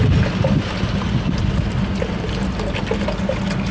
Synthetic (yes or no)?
no